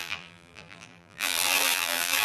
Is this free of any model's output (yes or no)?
no